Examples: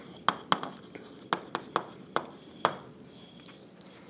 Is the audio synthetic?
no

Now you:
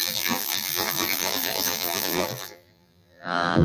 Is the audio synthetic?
yes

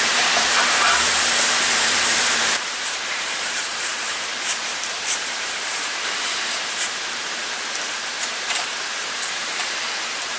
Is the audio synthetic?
yes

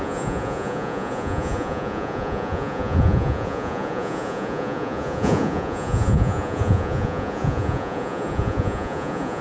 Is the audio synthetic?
yes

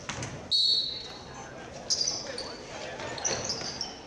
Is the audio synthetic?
no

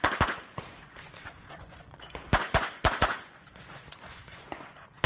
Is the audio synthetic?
yes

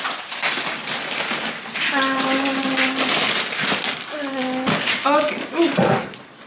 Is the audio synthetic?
no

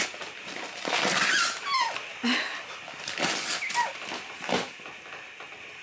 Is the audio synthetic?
no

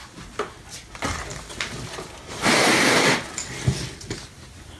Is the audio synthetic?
no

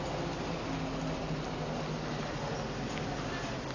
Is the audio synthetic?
no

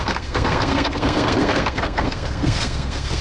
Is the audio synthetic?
yes